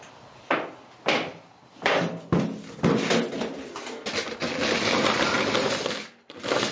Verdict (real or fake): real